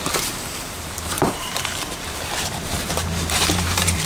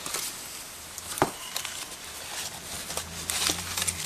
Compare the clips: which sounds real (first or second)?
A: second